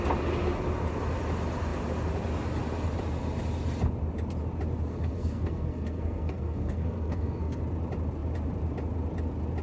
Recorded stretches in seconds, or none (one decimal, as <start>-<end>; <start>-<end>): 0.0-4.9; 7.6-9.6